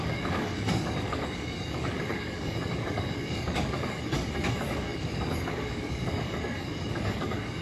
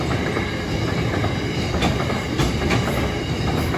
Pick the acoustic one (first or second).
second